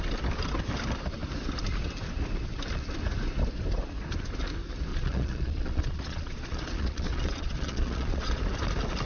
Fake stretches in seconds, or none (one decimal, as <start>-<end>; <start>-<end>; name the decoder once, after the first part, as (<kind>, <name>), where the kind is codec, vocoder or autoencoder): 4.9-8.4 (vocoder, Vocos)